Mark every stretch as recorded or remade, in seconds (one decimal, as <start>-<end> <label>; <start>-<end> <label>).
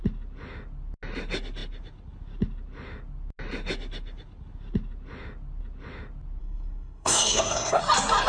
0.0-6.4 recorded; 6.4-7.8 remade; 7.8-8.3 recorded